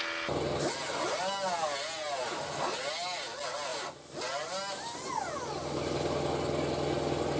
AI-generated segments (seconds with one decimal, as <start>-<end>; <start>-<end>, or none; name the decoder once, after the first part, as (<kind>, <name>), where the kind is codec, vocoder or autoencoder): none